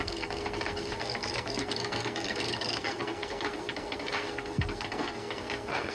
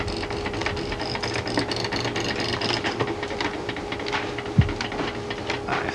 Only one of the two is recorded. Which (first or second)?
second